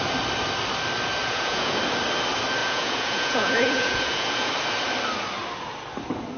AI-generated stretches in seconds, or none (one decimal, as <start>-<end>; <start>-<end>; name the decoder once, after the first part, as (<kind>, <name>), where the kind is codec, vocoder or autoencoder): 1.2-1.8 (vocoder, Vocos); 2.6-4.5